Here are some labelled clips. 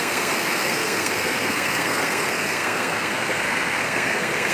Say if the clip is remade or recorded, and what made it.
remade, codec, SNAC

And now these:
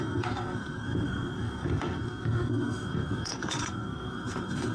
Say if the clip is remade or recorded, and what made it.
remade, codec, SNAC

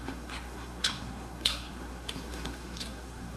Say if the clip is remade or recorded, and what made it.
remade, codec, SNAC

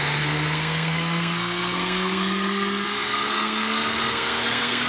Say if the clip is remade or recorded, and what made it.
remade, codec, SNAC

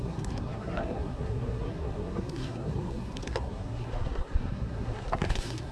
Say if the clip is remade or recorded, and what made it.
remade, codec, SNAC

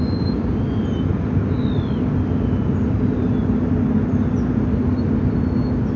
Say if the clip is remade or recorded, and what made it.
recorded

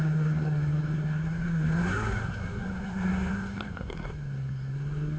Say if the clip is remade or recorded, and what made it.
remade, codec, SNAC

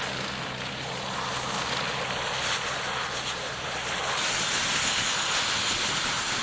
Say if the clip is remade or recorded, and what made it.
recorded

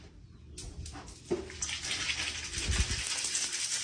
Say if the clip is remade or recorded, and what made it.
recorded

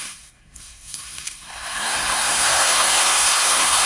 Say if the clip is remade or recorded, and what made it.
remade, codec, SNAC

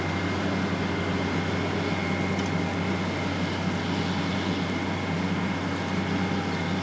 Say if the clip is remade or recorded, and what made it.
recorded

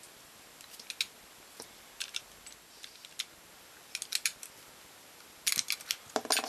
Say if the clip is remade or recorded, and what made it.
recorded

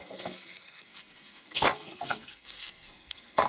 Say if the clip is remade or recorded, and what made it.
remade, codec, SNAC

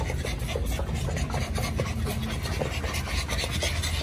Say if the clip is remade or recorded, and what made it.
recorded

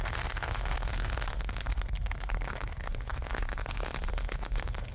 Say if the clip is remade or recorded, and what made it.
remade, codec, SNAC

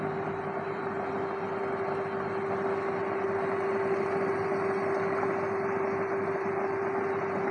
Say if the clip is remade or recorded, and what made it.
recorded